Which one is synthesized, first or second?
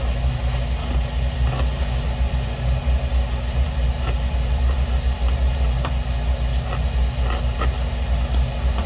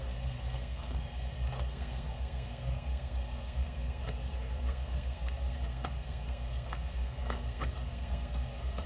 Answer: second